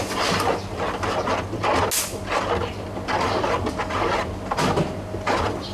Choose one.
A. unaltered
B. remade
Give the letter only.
A